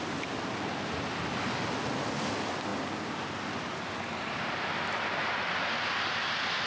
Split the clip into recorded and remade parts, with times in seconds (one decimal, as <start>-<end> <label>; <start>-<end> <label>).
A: 0.0-6.7 recorded